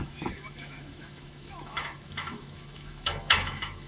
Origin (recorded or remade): remade